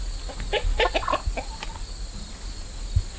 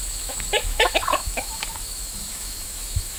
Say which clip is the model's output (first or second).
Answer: second